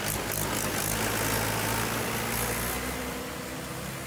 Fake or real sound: real